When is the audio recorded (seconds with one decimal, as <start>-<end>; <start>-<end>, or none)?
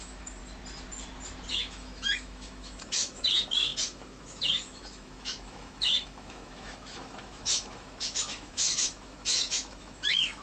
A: 0.4-1.5